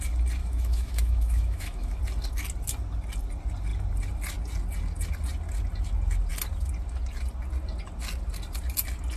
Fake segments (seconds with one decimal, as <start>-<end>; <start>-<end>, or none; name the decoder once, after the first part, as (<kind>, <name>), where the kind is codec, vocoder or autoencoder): 0.4-2.0 (autoencoder, DAC-VAE)